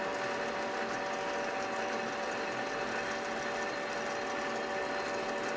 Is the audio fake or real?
real